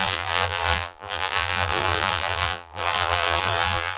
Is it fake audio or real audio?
fake